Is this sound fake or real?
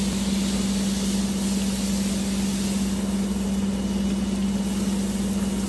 real